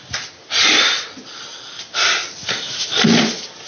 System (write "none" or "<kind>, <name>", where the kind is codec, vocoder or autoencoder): none